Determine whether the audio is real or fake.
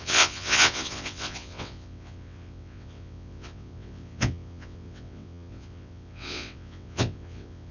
fake